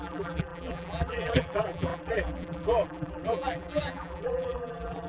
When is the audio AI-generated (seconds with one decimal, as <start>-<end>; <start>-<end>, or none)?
0.0-5.1